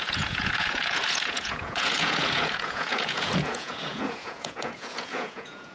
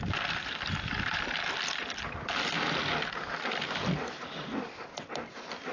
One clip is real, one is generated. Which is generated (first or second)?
first